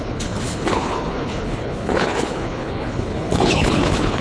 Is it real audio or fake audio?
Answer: fake